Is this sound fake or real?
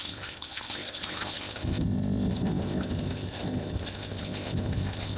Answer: fake